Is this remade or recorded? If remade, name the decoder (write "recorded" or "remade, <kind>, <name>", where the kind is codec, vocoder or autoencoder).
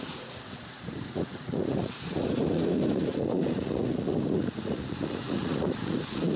remade, vocoder, Vocos